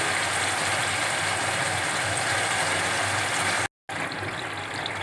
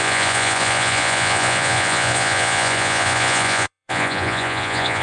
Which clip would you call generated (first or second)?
second